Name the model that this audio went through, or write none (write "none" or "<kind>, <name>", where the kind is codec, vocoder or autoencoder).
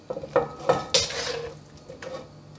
none